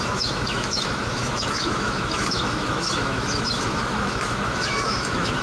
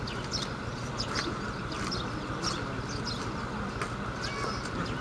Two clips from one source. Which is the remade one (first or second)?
first